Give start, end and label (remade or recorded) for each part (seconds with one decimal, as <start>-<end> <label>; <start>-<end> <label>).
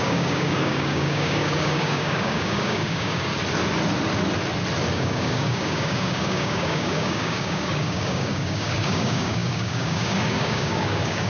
0.0-3.3 remade; 3.3-4.9 recorded; 4.9-11.3 remade